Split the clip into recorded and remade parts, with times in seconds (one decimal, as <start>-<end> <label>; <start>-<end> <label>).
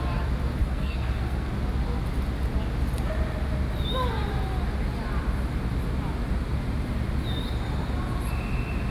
0.0-0.6 recorded; 0.6-1.5 remade; 1.5-8.9 recorded